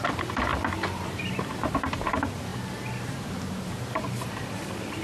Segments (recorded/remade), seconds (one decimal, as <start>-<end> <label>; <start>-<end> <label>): 0.0-0.5 remade; 0.5-1.2 recorded; 1.2-2.5 remade; 2.5-3.1 recorded; 3.1-5.0 remade